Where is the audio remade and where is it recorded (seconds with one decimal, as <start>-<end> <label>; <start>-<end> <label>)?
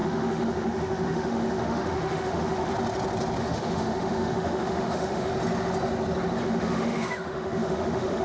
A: 0.0-2.7 remade; 2.7-3.4 recorded; 3.4-5.3 remade; 5.3-6.4 recorded; 6.4-8.2 remade